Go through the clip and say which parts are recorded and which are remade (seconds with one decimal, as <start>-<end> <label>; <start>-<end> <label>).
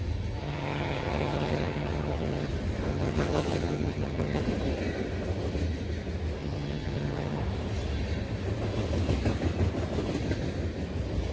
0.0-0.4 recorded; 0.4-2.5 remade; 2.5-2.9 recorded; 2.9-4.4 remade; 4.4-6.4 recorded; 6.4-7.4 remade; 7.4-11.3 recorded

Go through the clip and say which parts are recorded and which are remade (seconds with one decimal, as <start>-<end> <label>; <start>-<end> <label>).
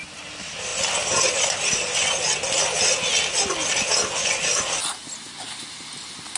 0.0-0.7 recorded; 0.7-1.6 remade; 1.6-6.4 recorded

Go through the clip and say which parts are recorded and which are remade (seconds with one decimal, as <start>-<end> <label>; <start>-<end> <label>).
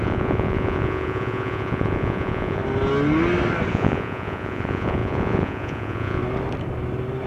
0.0-2.6 remade; 2.6-3.7 recorded; 3.7-6.2 remade; 6.2-7.3 recorded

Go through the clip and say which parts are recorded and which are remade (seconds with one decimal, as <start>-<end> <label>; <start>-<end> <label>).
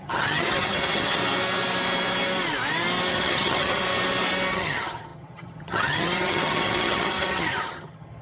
0.0-1.2 remade; 1.2-3.1 recorded; 3.1-3.8 remade; 3.8-4.5 recorded; 4.5-8.2 remade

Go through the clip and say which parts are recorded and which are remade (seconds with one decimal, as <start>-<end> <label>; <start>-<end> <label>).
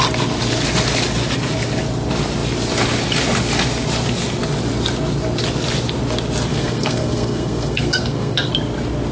0.0-6.5 recorded; 6.5-8.5 remade; 8.5-9.1 recorded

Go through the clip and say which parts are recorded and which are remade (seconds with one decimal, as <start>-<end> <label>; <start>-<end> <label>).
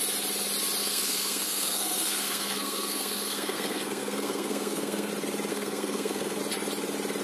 0.0-0.8 recorded; 0.8-5.1 remade; 5.1-5.5 recorded; 5.5-6.4 remade; 6.4-7.2 recorded